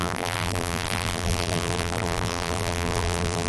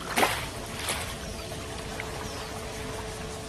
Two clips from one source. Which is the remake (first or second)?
first